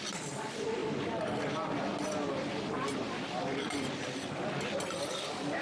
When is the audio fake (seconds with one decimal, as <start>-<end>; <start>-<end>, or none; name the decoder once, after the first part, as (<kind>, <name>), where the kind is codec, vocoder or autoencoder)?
none